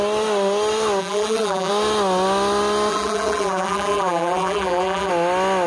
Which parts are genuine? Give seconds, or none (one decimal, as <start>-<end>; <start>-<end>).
0.0-1.0; 1.7-2.9; 5.1-5.7